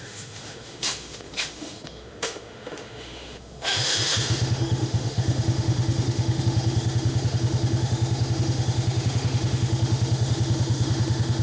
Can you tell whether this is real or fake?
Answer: fake